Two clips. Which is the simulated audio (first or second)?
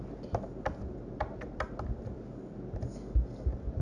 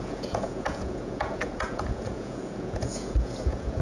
second